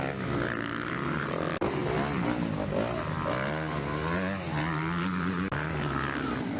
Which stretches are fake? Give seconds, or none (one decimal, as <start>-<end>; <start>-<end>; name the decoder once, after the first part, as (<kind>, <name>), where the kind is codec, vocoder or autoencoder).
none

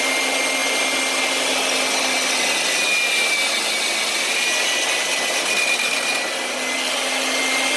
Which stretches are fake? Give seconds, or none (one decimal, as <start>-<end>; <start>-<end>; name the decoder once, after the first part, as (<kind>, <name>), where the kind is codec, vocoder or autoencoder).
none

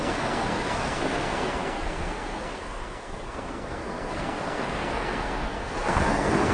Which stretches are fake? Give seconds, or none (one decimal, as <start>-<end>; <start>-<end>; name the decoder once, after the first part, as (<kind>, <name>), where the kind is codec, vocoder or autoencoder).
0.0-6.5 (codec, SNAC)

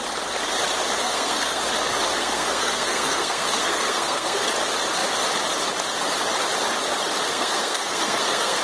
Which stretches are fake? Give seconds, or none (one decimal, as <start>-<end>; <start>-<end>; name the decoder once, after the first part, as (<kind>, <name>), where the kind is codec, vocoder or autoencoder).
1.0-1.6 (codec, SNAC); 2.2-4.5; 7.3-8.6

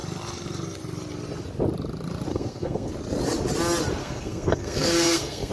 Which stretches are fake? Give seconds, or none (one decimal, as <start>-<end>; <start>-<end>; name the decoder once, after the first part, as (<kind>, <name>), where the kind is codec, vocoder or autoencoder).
2.3-2.9 (codec, SNAC); 4.0-5.5

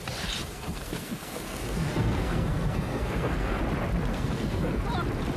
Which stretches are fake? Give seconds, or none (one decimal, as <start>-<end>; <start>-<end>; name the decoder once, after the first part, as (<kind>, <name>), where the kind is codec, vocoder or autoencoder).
0.4-3.6 (codec, SNAC); 4.1-4.8